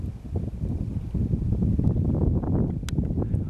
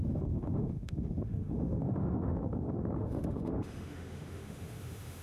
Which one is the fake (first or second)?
second